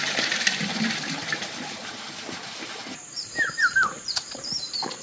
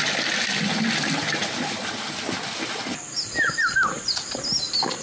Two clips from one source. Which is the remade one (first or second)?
first